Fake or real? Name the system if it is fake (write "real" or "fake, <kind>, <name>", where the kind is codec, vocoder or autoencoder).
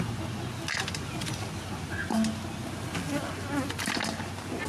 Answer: real